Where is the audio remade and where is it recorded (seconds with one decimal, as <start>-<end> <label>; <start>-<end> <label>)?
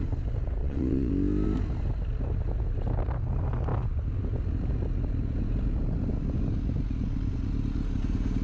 0.0-0.6 recorded; 0.6-1.1 remade; 1.1-8.4 recorded